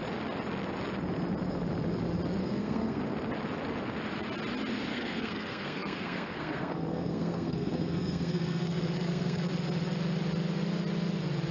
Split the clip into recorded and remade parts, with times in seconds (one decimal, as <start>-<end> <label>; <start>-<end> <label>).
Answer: 0.0-2.4 recorded; 2.4-3.0 remade; 3.0-4.9 recorded; 4.9-9.5 remade; 9.5-11.5 recorded

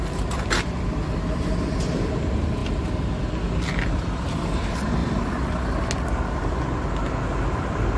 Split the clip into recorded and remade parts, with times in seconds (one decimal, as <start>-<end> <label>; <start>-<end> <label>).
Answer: 0.0-8.0 recorded

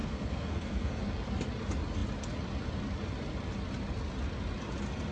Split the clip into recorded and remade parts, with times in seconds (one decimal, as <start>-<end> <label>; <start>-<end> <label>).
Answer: 0.0-1.0 remade; 1.0-5.1 recorded

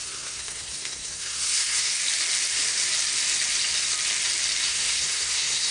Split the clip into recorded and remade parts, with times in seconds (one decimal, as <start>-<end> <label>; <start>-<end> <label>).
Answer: 0.0-1.9 remade; 1.9-4.7 recorded; 4.7-5.7 remade

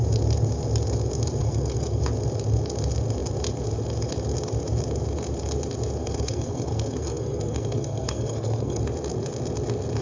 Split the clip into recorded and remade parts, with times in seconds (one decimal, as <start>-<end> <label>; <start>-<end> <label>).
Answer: 0.0-1.4 recorded; 1.4-2.0 remade; 2.0-6.0 recorded; 6.0-8.8 remade; 8.8-10.0 recorded

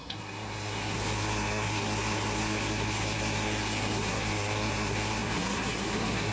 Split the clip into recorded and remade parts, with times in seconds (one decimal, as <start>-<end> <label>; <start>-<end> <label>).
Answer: 0.0-6.3 remade

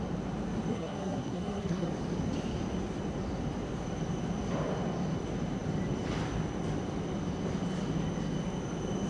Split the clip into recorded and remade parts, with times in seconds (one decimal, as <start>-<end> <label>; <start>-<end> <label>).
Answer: 0.0-0.7 recorded; 0.7-1.9 remade; 1.9-9.1 recorded

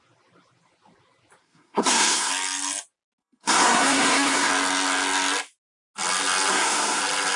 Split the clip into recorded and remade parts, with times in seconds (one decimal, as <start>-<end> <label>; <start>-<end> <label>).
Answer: 0.0-1.4 recorded; 1.4-2.3 remade; 2.3-3.2 recorded; 3.2-4.5 remade; 4.5-6.5 recorded; 6.5-7.0 remade; 7.0-7.4 recorded